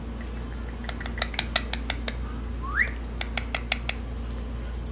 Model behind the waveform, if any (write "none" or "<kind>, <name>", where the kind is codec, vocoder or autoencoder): none